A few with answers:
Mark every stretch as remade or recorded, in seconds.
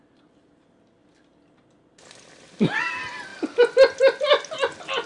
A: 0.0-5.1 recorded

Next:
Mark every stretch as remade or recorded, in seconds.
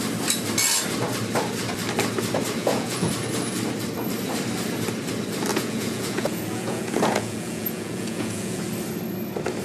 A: 0.0-2.6 recorded; 2.6-3.1 remade; 3.1-5.5 recorded; 5.5-8.6 remade; 8.6-9.6 recorded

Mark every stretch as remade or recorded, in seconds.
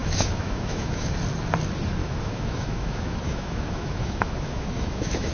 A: 0.0-1.1 remade; 1.1-2.0 recorded; 2.0-5.3 remade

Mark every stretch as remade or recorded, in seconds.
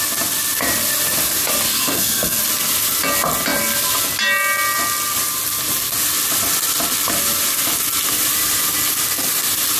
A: 0.0-1.7 recorded; 1.7-2.4 remade; 2.4-9.8 recorded